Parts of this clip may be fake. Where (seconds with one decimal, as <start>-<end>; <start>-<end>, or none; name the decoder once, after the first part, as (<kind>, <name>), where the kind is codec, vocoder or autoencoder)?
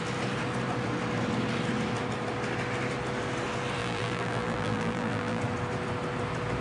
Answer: 3.8-5.4 (vocoder, BigVGAN v2)